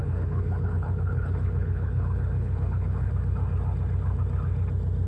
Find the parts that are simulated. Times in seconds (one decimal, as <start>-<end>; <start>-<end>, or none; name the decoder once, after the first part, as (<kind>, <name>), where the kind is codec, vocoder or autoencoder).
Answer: 0.0-3.1 (codec, HILCodec)